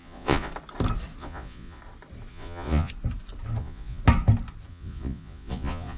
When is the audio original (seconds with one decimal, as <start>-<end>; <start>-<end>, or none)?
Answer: 0.5-1.2; 1.8-2.3; 2.9-3.6; 4.0-4.7